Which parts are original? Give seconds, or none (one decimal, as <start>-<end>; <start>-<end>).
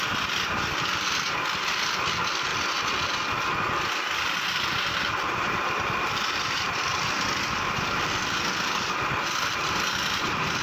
0.0-10.6